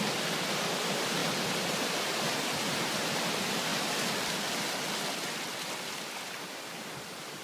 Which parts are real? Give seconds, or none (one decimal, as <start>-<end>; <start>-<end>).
0.0-7.4